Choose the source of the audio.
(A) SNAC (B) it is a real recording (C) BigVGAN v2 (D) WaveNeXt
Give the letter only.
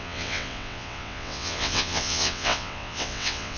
D